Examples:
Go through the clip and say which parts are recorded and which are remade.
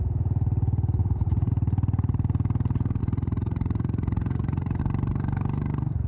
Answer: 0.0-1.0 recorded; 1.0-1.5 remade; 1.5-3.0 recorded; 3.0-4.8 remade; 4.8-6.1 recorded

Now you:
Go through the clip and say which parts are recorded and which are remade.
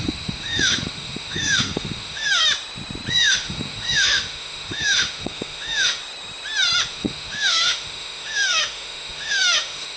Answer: 0.0-2.4 remade; 2.4-3.1 recorded; 3.1-6.0 remade; 6.0-6.9 recorded; 6.9-10.0 remade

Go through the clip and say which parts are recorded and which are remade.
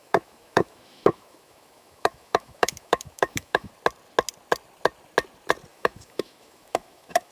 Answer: 0.0-3.7 remade; 3.7-5.7 recorded; 5.7-7.3 remade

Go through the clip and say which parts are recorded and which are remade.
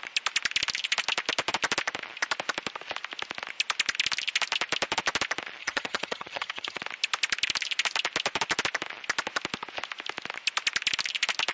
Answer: 0.0-5.6 recorded; 5.6-6.8 remade; 6.8-11.5 recorded